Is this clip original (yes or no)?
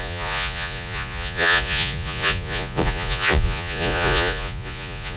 no